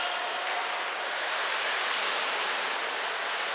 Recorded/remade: recorded